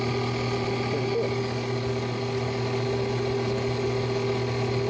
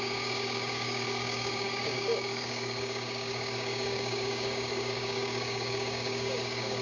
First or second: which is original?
first